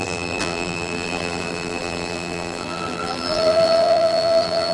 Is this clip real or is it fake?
fake